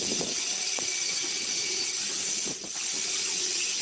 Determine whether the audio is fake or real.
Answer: fake